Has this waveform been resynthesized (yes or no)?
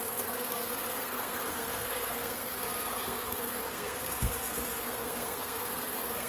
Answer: yes